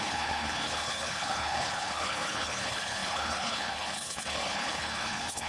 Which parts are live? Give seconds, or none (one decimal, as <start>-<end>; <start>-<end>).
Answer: none